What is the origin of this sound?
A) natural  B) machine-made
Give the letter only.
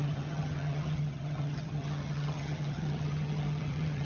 B